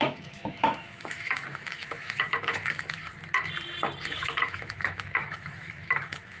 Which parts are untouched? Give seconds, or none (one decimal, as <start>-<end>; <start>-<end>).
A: 3.0-4.1